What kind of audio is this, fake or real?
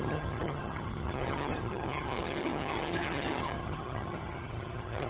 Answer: fake